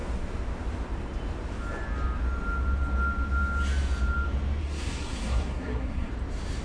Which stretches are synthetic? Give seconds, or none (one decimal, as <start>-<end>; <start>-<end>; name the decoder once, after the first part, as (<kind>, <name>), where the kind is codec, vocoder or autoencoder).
4.6-6.1 (codec, SNAC)